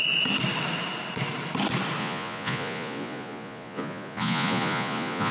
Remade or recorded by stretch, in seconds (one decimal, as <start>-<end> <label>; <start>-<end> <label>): 0.0-2.0 recorded; 2.0-5.3 remade